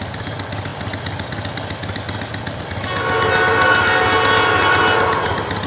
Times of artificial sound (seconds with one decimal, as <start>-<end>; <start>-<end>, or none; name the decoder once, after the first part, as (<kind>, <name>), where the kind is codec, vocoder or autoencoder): none